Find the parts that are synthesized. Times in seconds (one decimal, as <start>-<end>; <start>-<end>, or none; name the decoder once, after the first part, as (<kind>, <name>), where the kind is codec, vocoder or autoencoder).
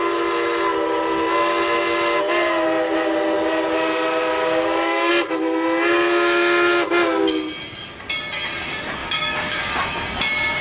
4.3-5.1 (codec, DAC); 9.0-9.6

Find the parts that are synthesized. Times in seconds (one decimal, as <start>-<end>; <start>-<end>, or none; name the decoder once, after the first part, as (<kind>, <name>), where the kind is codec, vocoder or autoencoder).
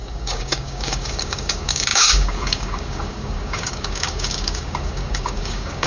0.0-5.9 (codec, DAC)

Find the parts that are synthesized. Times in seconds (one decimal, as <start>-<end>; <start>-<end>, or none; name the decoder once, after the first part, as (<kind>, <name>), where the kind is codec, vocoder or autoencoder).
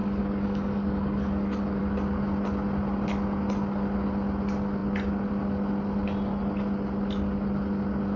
0.0-1.8 (codec, DAC)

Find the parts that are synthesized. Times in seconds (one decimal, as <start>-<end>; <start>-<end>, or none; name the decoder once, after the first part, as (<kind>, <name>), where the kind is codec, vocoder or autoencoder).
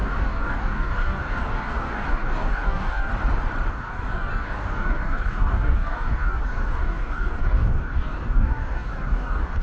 0.0-3.1 (codec, DAC); 3.7-9.6